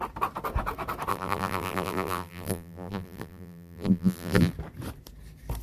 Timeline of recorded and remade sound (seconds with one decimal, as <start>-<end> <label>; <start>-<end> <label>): 0.0-1.1 recorded; 1.1-4.5 remade; 4.5-5.6 recorded